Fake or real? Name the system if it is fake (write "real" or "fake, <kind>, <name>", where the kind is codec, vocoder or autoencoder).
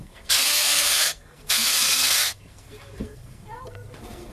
fake, codec, SNAC